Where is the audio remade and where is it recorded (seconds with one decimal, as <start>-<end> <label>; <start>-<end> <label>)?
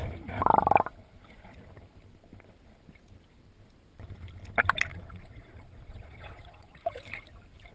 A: 0.0-4.9 recorded; 4.9-7.0 remade; 7.0-7.7 recorded